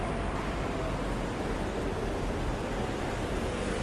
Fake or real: real